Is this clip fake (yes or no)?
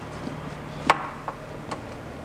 no